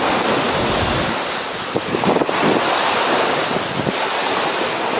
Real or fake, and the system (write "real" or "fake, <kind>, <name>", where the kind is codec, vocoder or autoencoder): real